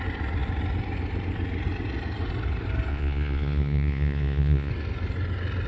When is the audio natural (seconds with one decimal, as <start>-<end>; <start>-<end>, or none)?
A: 0.0-2.9; 4.7-5.7